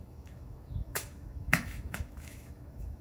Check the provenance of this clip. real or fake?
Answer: fake